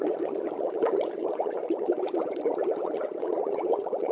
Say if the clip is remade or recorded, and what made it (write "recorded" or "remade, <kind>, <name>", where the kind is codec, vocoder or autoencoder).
remade, vocoder, Vocos